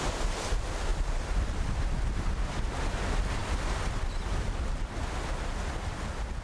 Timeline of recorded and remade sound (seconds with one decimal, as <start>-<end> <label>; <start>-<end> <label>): 0.0-0.9 recorded; 0.9-2.7 remade; 2.7-3.4 recorded; 3.4-4.8 remade; 4.8-6.4 recorded